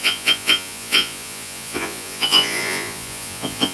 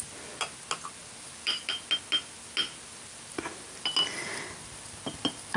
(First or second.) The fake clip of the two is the first